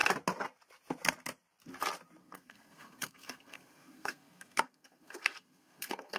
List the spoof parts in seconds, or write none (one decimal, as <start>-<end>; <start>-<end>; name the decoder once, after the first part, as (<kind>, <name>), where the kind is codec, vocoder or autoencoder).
2.2-6.2 (codec, SNAC)